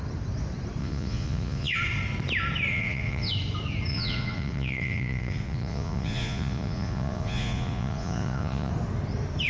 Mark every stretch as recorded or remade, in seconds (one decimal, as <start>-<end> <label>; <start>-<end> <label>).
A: 0.0-0.8 recorded; 0.8-1.8 remade; 1.8-2.7 recorded; 2.7-3.3 remade; 3.3-3.9 recorded; 3.9-8.7 remade; 8.7-9.5 recorded